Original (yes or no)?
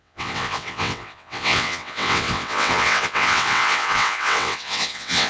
no